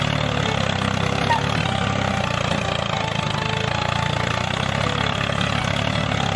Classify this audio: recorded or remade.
recorded